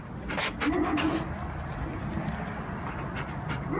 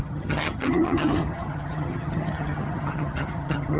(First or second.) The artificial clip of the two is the second